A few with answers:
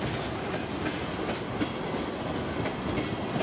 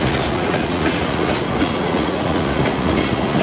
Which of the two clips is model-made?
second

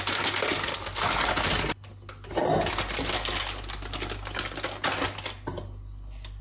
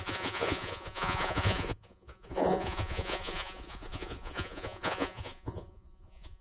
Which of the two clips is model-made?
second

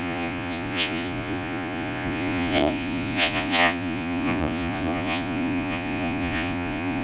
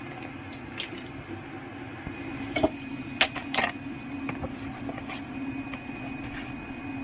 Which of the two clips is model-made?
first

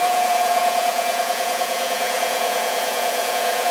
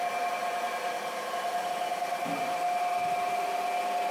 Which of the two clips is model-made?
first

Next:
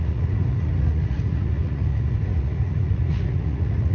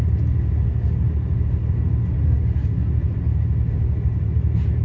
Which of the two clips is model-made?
first